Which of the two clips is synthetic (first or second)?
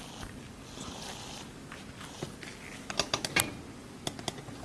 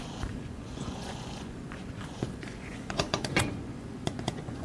second